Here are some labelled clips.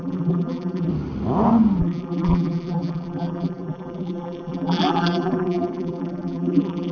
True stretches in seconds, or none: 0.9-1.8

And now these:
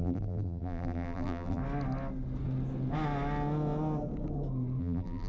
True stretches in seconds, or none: 1.6-4.8

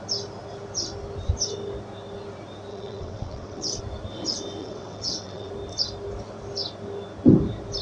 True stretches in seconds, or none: 0.0-2.7; 3.8-4.6; 5.5-7.8

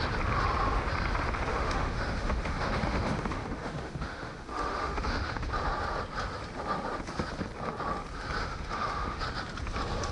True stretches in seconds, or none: 0.0-1.5; 5.5-8.4; 9.2-10.1

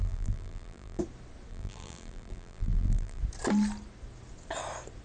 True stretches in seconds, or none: 1.0-1.5; 3.2-5.0

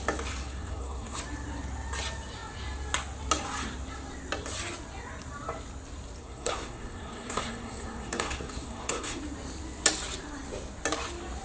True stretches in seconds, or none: 0.0-0.4; 1.2-6.2; 9.2-11.4